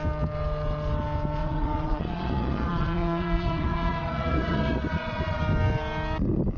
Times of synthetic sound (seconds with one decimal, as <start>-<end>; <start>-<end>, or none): 1.4-5.4